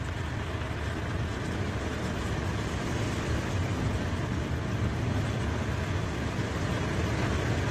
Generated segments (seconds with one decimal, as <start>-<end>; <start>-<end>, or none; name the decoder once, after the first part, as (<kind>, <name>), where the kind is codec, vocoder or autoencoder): none